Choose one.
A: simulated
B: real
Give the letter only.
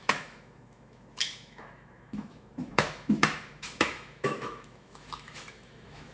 A